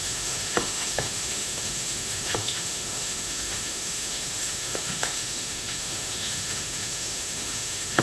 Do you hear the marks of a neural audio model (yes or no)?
yes